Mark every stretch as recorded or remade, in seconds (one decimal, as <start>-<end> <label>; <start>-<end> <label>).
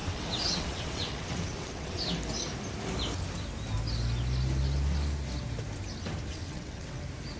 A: 0.0-2.0 remade; 2.0-6.3 recorded; 6.3-7.0 remade; 7.0-7.4 recorded